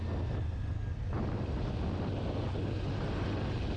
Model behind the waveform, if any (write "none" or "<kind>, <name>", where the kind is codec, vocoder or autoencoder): none